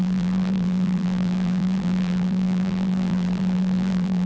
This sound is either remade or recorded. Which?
remade